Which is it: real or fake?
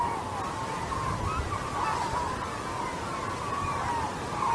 real